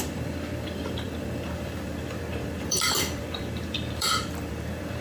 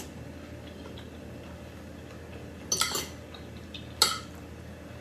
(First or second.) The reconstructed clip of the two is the first